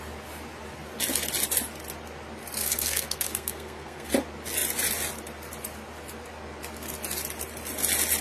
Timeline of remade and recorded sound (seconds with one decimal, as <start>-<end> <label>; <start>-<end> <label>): 0.0-2.6 recorded; 2.6-4.1 remade; 4.1-8.2 recorded